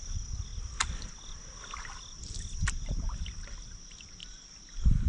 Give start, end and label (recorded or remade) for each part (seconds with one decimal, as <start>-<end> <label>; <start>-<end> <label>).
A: 0.0-4.2 recorded; 4.2-5.1 remade